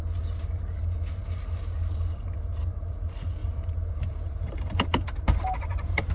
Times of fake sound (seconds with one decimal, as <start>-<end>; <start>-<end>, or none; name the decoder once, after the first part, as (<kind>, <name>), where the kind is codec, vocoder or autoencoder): 3.4-6.1 (vocoder, BigVGAN v2)